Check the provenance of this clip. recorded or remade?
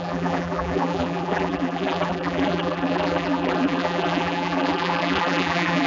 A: remade